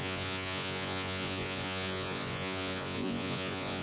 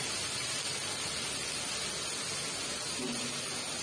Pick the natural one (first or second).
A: second